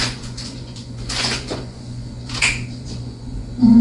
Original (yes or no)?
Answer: no